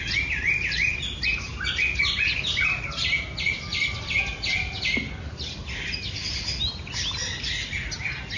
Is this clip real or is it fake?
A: real